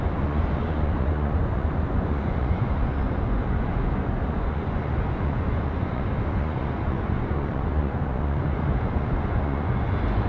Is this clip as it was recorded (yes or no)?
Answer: no